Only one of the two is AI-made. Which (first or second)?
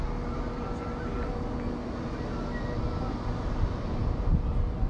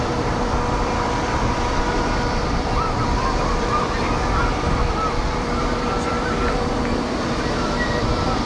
second